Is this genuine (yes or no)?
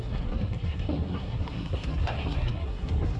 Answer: no